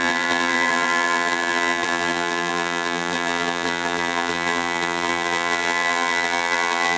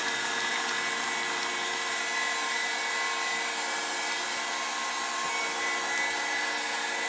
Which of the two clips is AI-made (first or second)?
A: first